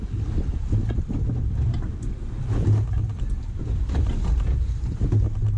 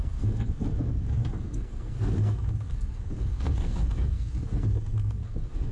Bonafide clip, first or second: first